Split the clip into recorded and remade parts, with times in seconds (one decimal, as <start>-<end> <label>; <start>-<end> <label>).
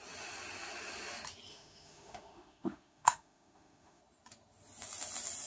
0.0-1.5 recorded; 1.5-4.0 remade; 4.0-5.5 recorded